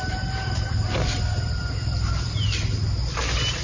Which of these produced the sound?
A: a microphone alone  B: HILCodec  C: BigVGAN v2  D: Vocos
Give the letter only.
A